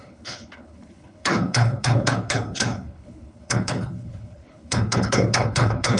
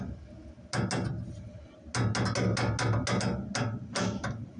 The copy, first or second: first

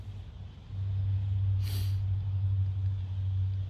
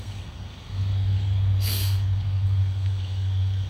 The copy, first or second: second